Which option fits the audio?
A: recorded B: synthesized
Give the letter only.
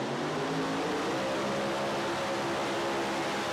A